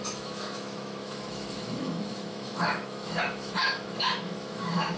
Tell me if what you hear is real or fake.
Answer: fake